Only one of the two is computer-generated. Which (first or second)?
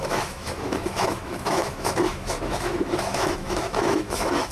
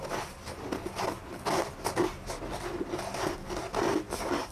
first